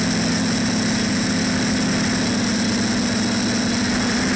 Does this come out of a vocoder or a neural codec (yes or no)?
no